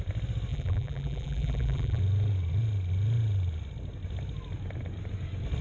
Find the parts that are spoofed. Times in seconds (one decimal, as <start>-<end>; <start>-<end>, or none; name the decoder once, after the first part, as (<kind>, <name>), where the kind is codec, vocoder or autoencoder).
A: 0.5-2.0 (vocoder, BigVGAN v2)